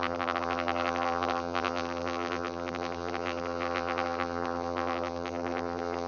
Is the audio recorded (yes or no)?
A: no